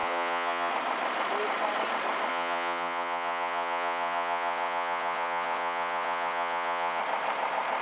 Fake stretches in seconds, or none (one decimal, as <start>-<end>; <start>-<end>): 0.0-0.7; 2.3-7.0